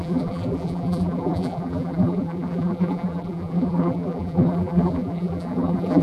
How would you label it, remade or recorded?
remade